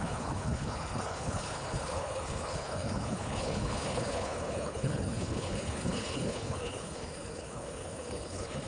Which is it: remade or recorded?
remade